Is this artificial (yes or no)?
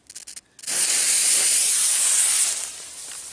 no